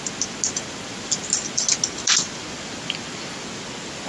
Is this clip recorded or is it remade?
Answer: recorded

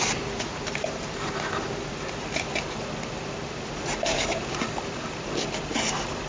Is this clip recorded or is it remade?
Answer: recorded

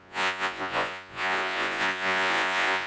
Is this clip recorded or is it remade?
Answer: remade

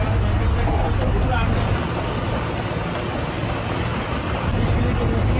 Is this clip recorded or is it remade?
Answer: recorded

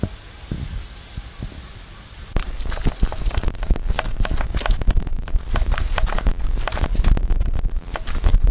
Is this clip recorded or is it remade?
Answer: recorded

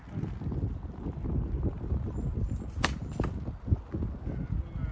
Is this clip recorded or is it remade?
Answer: recorded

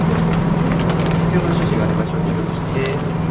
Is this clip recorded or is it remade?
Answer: recorded